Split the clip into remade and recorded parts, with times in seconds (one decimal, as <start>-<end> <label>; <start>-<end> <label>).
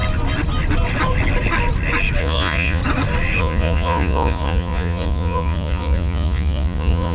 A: 0.0-2.2 recorded; 2.2-2.8 remade; 2.8-3.4 recorded; 3.4-7.1 remade